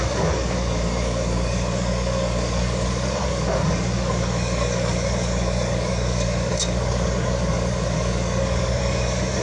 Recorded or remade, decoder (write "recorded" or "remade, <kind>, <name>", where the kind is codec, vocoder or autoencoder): remade, codec, DAC